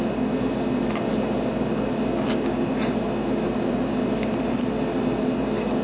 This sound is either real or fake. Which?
real